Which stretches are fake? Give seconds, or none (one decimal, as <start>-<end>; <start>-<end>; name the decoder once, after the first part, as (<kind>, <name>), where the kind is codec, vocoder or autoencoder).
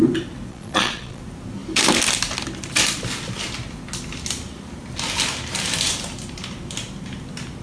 0.5-1.2 (vocoder, Vocos)